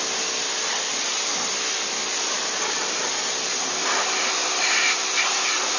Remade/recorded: remade